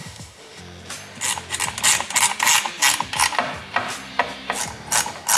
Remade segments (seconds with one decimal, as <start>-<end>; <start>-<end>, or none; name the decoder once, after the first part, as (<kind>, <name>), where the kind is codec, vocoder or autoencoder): 0.0-0.6 (autoencoder, DAC-VAE)